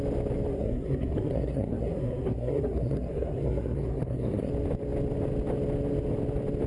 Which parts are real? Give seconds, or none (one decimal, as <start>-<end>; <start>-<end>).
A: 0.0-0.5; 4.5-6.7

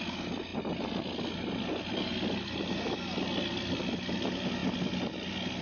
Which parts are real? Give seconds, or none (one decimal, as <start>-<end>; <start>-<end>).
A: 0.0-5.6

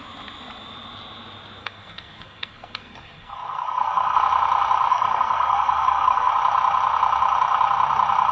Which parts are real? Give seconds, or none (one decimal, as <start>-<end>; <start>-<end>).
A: 0.0-1.6; 4.2-4.9; 6.3-8.3

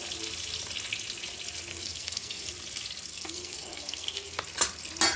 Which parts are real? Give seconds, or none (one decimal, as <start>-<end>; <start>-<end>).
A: 0.0-1.7; 2.5-3.1; 4.4-5.2

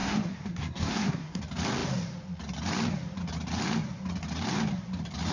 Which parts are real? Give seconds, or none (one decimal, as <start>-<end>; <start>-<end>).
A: 1.4-5.3